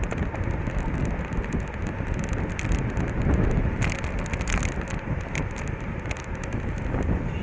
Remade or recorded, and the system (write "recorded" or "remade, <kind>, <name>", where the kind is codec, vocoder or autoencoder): recorded